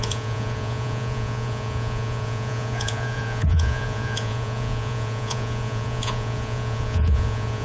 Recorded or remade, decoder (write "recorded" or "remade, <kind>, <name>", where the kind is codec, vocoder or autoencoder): remade, vocoder, Vocos